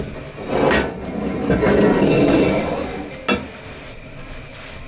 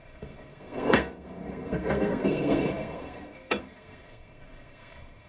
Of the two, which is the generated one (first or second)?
second